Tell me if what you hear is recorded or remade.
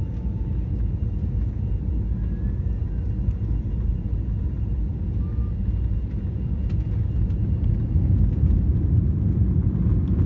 recorded